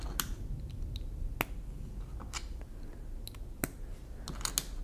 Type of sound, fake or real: real